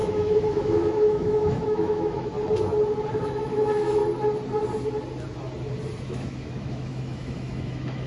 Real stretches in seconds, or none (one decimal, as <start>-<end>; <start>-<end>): 2.3-3.1; 4.0-6.0